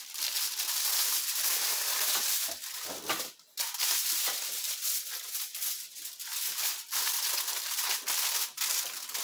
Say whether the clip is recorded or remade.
recorded